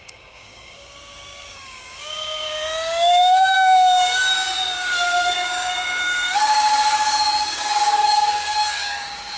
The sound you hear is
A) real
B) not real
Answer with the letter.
B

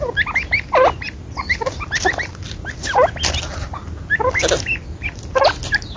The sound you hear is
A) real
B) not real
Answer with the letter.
A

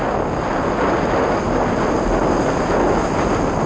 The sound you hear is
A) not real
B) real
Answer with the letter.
B